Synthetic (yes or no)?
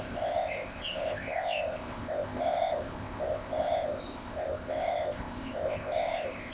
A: yes